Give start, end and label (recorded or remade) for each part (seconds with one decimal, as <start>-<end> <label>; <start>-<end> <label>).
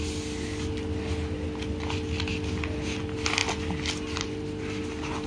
0.0-5.3 recorded